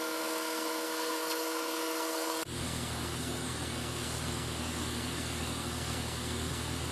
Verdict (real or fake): fake